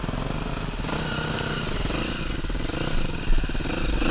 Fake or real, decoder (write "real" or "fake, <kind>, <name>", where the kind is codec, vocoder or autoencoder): real